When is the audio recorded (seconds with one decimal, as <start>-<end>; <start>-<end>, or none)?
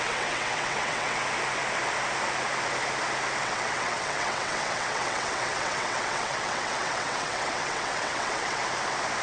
1.2-3.4; 8.6-9.2